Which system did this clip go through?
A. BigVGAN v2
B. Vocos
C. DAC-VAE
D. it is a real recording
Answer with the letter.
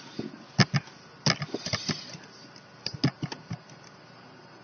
D